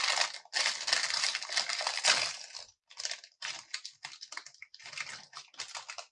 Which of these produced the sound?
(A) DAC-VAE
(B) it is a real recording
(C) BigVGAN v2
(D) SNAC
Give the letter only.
B